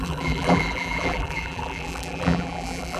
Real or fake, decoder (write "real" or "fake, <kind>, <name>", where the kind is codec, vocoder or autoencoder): fake, vocoder, BigVGAN v2